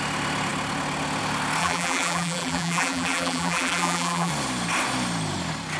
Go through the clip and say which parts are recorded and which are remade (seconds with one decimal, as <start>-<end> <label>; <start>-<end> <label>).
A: 0.0-1.6 recorded; 1.6-4.3 remade; 4.3-5.8 recorded